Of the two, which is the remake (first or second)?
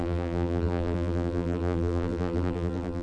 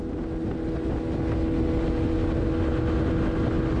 first